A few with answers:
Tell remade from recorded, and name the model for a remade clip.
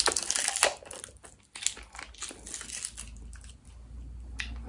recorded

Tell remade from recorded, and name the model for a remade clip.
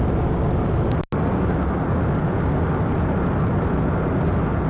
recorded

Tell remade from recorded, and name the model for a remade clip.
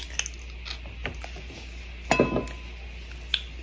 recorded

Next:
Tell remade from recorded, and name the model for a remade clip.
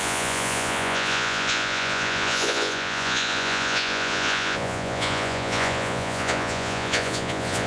remade, vocoder, Vocos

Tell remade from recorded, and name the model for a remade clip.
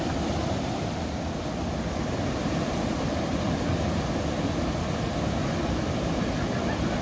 recorded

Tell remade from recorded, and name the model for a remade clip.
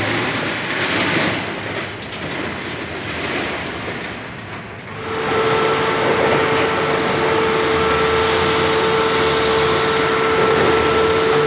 recorded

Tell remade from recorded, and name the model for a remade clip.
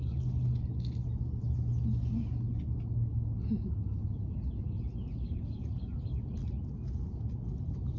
recorded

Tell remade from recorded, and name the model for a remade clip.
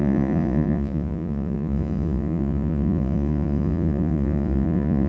remade, vocoder, Vocos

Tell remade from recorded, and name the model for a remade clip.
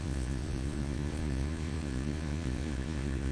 remade, vocoder, Vocos